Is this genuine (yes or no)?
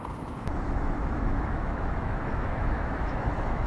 no